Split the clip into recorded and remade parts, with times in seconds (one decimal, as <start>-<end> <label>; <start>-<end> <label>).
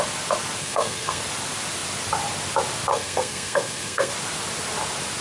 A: 0.0-0.6 recorded; 0.6-1.2 remade; 1.2-2.9 recorded; 2.9-4.1 remade; 4.1-5.2 recorded